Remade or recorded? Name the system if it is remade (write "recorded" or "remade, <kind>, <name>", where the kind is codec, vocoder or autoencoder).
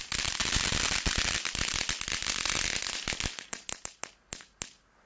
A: recorded